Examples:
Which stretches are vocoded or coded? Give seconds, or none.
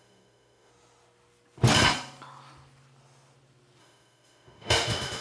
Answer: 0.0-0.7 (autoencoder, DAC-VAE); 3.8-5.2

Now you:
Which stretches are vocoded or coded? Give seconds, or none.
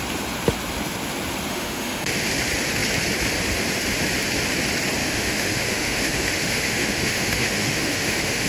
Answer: 1.5-2.1 (autoencoder, DAC-VAE); 5.0-8.5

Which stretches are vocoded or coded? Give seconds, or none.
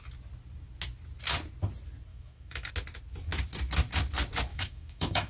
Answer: 2.1-2.7 (autoencoder, DAC-VAE); 4.5-5.3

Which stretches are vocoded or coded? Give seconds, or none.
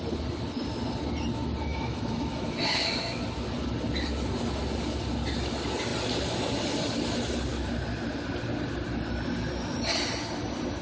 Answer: 1.7-3.2 (autoencoder, DAC-VAE)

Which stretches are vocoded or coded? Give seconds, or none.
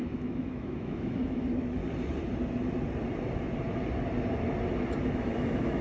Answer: 0.0-1.8 (autoencoder, DAC-VAE); 5.0-5.8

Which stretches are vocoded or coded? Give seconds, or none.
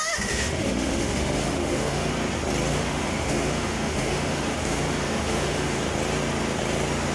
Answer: 0.0-2.1 (autoencoder, DAC-VAE); 2.7-5.8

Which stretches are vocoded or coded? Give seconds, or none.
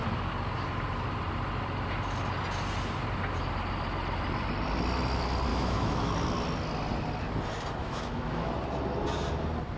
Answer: 5.5-6.1 (autoencoder, DAC-VAE); 7.8-8.5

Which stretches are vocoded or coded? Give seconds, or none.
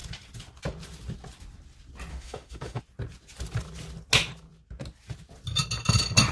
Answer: 2.1-2.8 (autoencoder, DAC-VAE)